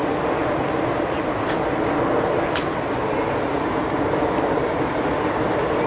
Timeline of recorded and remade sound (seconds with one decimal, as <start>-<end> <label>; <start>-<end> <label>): 0.0-5.9 recorded